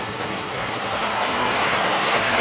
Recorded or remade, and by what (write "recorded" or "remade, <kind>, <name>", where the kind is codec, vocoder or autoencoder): remade, codec, SNAC